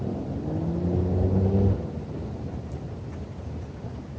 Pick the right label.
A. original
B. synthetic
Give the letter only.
A